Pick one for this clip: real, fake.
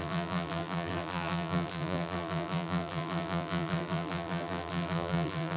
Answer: fake